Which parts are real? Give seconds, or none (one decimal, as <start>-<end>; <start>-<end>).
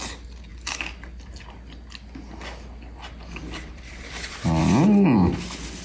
0.0-0.5; 1.5-3.4; 4.6-5.8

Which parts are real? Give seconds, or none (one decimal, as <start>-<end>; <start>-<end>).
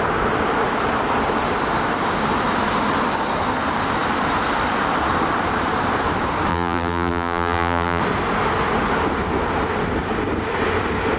0.0-6.5; 8.0-11.2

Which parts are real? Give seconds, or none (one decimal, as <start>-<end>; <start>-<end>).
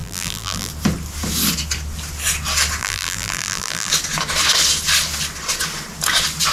0.7-2.8; 3.9-6.5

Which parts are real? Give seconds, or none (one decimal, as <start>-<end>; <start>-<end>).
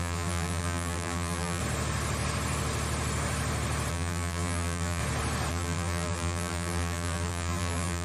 1.6-3.9; 5.0-5.5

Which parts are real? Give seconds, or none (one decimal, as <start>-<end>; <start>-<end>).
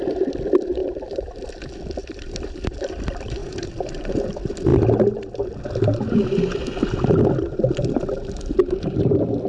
0.0-0.8; 1.5-2.0; 2.8-3.4; 4.3-9.5